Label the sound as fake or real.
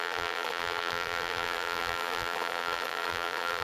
fake